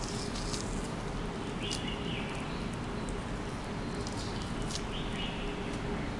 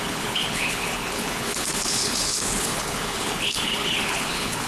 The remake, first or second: second